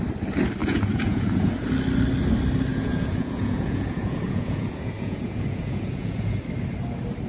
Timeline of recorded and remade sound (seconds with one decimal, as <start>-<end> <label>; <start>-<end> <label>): 0.0-0.6 recorded; 0.6-1.5 remade; 1.5-2.7 recorded; 2.7-6.4 remade; 6.4-7.3 recorded